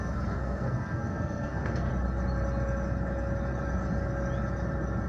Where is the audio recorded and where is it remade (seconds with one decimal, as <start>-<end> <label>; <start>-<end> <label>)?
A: 0.0-1.9 remade; 1.9-5.1 recorded